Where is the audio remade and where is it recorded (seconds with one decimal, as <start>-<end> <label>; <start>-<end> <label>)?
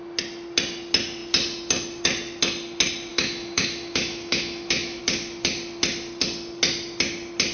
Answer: 0.0-3.1 recorded; 3.1-5.0 remade; 5.0-7.5 recorded